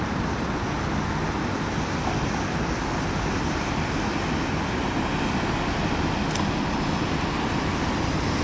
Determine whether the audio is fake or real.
real